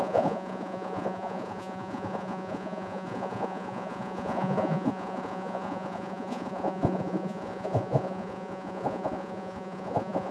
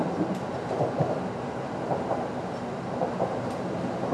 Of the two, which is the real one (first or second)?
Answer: second